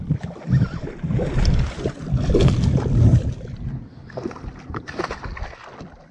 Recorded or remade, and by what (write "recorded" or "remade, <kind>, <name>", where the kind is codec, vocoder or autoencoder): recorded